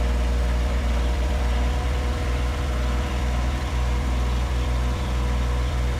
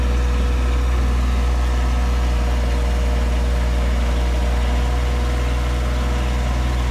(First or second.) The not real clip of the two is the first